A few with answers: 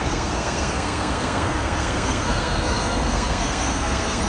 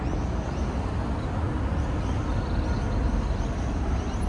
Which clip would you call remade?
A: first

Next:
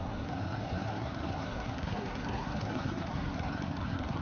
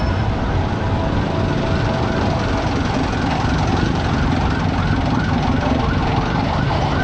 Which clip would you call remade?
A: first